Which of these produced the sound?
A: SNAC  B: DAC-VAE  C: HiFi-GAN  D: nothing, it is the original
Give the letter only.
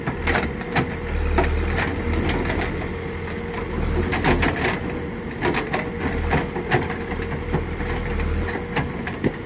D